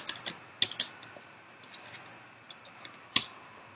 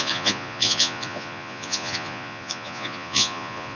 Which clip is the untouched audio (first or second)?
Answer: first